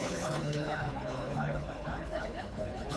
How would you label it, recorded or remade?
remade